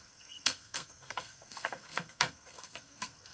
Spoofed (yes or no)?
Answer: yes